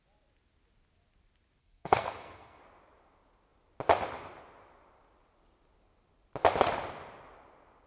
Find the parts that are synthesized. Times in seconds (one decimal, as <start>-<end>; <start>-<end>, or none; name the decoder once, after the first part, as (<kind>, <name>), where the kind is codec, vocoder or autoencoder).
1.6-2.6 (codec, SNAC)